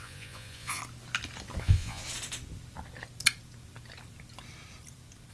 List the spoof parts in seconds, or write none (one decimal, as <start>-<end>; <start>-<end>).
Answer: 0.0-0.8; 1.6-2.0